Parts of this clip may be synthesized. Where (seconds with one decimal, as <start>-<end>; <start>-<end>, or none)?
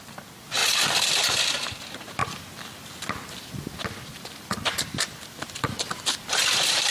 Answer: 0.0-0.6; 1.1-6.9